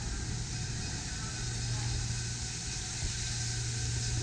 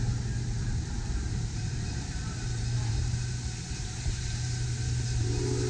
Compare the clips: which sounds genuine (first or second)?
first